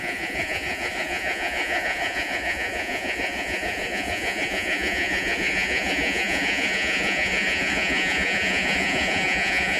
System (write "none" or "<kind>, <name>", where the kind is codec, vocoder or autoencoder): vocoder, Vocos